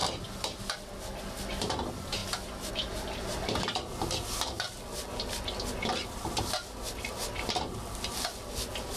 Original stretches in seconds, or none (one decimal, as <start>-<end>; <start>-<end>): 0.0-9.0